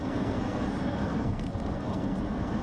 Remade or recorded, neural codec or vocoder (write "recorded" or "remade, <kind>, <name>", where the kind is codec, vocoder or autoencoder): remade, codec, SNAC